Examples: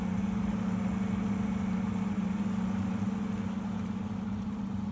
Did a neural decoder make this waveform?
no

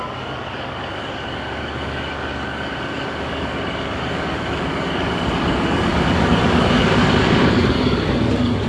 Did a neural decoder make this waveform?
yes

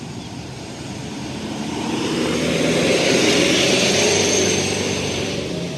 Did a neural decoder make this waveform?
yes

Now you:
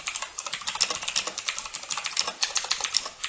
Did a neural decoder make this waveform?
no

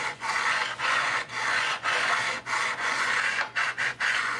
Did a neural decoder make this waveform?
yes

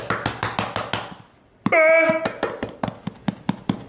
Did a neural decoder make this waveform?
no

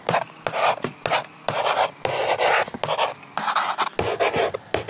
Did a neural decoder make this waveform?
no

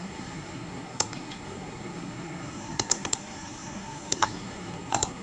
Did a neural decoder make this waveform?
yes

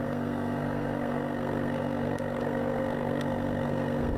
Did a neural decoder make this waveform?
yes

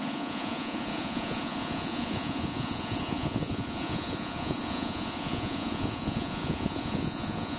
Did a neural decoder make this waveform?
yes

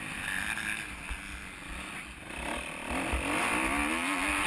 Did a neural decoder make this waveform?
no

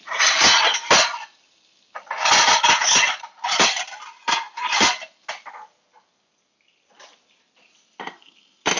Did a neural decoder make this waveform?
no